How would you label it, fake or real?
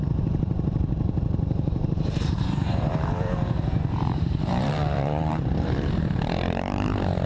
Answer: fake